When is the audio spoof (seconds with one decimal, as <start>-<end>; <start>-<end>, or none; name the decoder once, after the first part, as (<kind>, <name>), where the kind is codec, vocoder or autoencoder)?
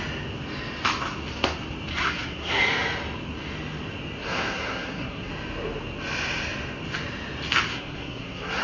1.9-2.6 (codec, SNAC); 4.2-5.3; 7.7-8.6